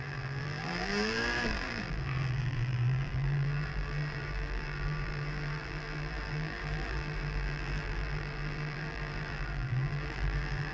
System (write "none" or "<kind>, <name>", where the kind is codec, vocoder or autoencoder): vocoder, BigVGAN v2